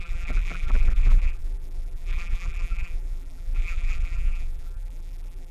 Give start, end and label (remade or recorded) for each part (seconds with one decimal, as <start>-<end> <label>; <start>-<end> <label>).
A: 0.0-5.5 remade